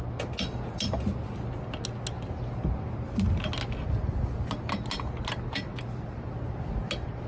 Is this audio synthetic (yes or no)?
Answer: no